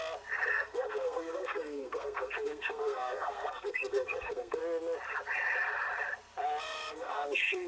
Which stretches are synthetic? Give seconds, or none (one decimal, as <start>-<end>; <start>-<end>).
0.5-4.6; 6.6-7.7